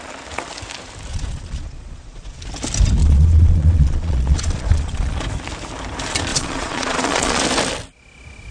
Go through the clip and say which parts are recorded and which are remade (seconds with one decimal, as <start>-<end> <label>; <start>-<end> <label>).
0.0-1.1 recorded; 1.1-2.4 remade; 2.4-3.0 recorded; 3.0-5.2 remade; 5.2-6.3 recorded; 6.3-7.4 remade; 7.4-8.5 recorded